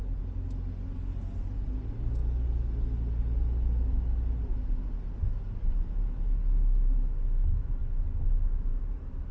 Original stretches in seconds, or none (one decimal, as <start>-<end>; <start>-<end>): 0.0-9.3